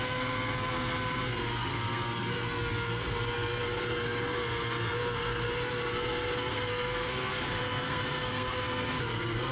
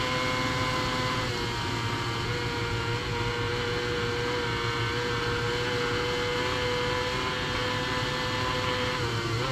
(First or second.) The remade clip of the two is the first